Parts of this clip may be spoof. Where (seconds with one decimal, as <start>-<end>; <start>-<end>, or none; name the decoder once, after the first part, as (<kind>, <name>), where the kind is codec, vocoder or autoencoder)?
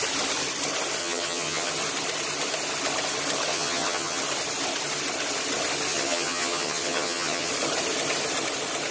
1.0-1.7 (vocoder, HiFi-GAN); 3.5-4.2; 5.9-7.5